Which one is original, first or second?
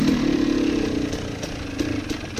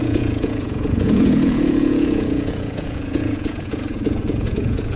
first